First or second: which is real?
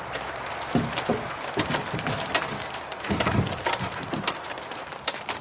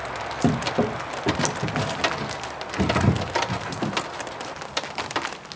second